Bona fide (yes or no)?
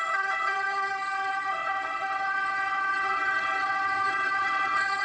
no